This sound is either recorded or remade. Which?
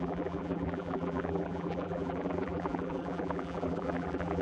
remade